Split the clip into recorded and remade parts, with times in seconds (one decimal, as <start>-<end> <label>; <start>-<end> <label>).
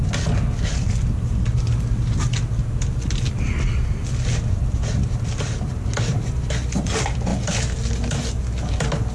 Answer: 0.0-5.0 recorded; 5.0-5.7 remade; 5.7-9.1 recorded